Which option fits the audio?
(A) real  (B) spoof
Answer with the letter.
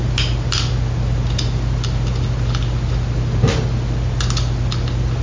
A